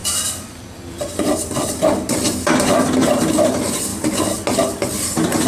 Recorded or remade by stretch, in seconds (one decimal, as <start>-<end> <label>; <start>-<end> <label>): 0.0-3.3 remade; 3.3-5.5 recorded